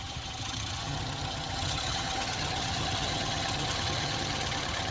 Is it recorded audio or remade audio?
remade